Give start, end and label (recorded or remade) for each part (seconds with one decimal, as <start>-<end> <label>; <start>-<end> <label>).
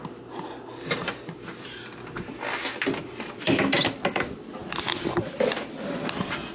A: 0.0-6.5 recorded